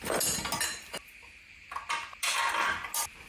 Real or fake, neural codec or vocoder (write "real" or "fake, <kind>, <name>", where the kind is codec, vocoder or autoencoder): real